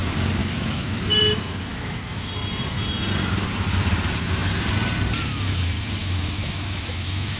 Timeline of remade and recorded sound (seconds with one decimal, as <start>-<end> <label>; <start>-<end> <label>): 0.0-0.4 recorded; 0.4-1.0 remade; 1.0-1.7 recorded; 1.7-2.3 remade; 2.3-6.0 recorded; 6.0-7.4 remade